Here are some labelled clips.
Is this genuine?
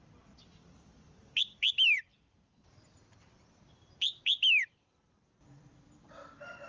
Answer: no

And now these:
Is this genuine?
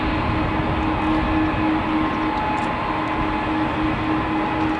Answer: yes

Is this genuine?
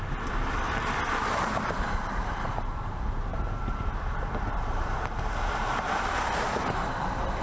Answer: no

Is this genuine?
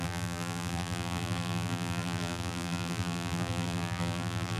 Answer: no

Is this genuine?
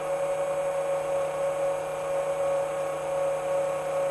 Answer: yes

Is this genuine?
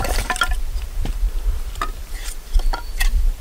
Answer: no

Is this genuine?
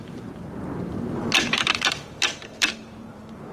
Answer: no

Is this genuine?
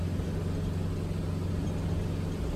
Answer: yes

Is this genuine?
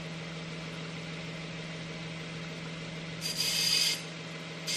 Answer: yes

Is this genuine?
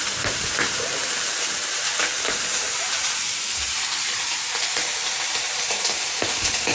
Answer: no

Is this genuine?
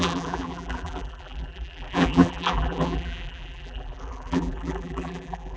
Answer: no